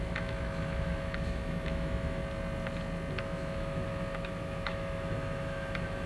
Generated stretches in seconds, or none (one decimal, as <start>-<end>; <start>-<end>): 0.0-2.2; 3.2-6.1